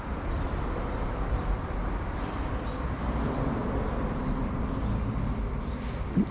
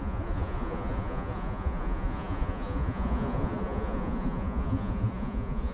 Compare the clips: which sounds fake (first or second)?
second